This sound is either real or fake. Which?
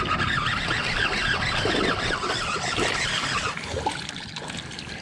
real